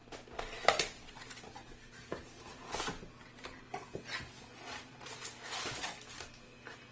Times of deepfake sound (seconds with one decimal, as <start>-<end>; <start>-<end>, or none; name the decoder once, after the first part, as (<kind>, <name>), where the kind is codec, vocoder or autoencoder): none